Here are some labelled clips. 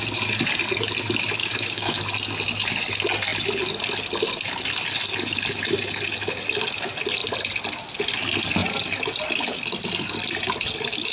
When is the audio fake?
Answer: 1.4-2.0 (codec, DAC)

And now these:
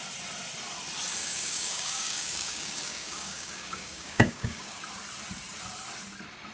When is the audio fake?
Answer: 1.2-4.8 (codec, DAC)